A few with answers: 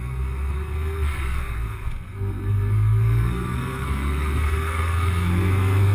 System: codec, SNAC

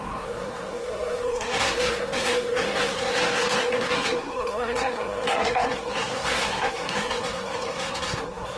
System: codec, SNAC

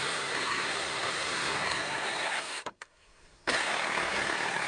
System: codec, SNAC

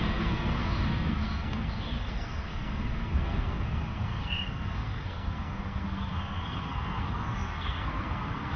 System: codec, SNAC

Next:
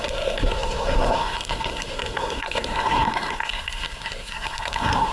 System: codec, SNAC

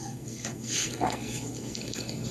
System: codec, SNAC